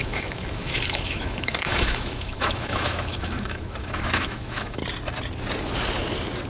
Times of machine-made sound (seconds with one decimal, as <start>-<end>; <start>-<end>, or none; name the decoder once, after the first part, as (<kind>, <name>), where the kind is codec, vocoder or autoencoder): 0.0-4.8 (autoencoder, DAC-VAE)